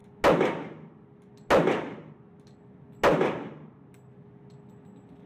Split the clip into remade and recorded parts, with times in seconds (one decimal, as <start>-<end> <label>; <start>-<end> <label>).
0.0-3.1 recorded; 3.1-3.9 remade; 3.9-5.3 recorded